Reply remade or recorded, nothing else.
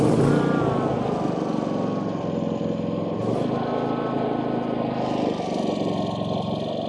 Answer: recorded